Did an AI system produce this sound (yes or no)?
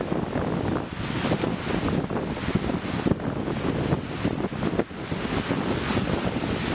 no